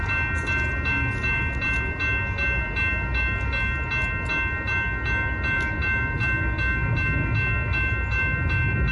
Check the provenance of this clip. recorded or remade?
recorded